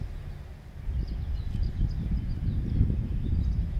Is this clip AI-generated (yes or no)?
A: no